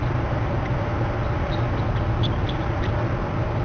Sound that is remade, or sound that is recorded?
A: recorded